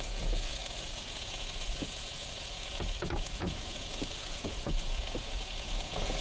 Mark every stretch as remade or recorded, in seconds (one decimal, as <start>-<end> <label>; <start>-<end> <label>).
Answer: 0.0-6.2 remade